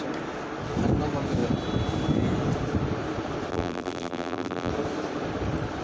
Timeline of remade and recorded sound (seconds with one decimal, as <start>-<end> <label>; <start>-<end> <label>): 0.0-3.5 recorded; 3.5-4.7 remade; 4.7-5.8 recorded